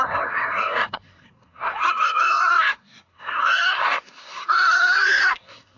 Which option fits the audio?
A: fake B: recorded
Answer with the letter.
A